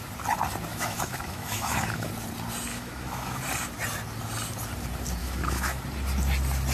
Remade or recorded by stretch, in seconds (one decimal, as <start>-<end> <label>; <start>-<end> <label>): 0.0-0.7 recorded; 0.7-2.1 remade; 2.1-2.7 recorded; 2.7-3.4 remade; 3.4-5.2 recorded; 5.2-5.8 remade; 5.8-6.7 recorded